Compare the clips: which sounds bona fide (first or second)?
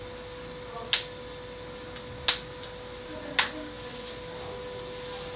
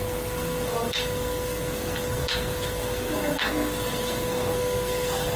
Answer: first